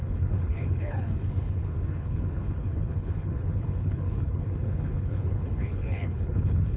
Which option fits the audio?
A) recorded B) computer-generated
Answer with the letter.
B